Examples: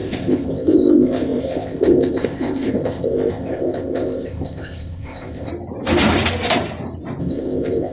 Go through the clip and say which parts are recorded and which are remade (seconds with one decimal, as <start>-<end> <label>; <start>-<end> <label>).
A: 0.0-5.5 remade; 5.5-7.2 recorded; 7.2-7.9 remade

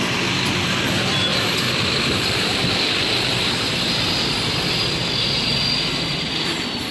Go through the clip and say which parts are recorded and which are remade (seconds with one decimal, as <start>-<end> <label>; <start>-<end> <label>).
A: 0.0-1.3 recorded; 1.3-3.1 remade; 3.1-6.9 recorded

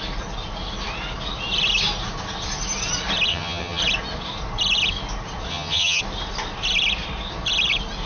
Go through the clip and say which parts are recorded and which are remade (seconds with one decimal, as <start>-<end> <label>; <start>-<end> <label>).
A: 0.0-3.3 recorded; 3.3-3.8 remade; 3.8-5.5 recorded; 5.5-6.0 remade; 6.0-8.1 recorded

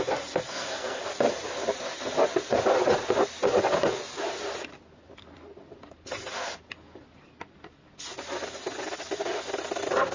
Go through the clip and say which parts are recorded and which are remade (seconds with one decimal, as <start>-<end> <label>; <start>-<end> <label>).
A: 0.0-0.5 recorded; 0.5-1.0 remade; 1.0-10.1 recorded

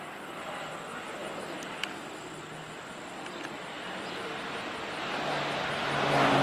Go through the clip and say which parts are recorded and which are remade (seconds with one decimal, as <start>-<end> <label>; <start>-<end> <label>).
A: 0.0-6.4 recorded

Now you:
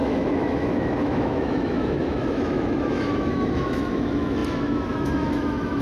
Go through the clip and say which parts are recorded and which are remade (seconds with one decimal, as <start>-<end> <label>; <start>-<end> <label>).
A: 0.0-5.8 remade